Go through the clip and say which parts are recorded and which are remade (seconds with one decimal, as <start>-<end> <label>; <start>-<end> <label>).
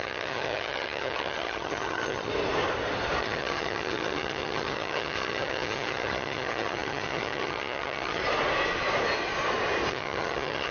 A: 0.0-2.3 remade; 2.3-3.2 recorded; 3.2-8.2 remade; 8.2-9.9 recorded; 9.9-10.7 remade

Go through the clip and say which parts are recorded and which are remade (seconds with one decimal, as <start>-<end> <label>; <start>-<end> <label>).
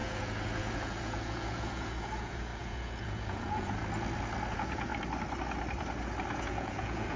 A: 0.0-3.8 remade; 3.8-4.5 recorded; 4.5-4.9 remade; 4.9-6.4 recorded; 6.4-7.2 remade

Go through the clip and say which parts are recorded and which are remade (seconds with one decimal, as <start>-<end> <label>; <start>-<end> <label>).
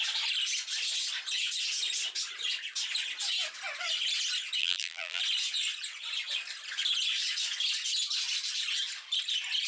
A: 0.0-4.6 recorded; 4.6-5.2 remade; 5.2-9.7 recorded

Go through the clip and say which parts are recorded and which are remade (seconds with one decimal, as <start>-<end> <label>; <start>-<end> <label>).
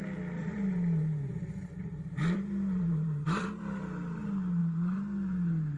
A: 0.0-0.4 recorded; 0.4-3.6 remade; 3.6-5.8 recorded